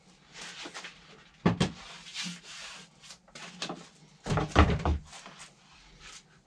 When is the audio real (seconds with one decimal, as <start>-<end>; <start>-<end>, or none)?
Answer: 0.0-6.5